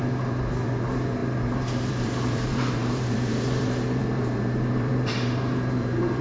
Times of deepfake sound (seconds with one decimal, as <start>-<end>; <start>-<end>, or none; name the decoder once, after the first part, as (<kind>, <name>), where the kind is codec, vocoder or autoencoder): 0.0-6.2 (vocoder, BigVGAN v2)